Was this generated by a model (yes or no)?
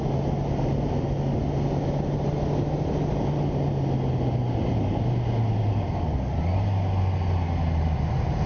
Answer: no